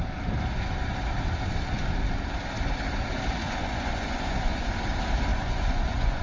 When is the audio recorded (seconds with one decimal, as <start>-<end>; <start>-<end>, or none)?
0.0-3.4; 4.7-5.3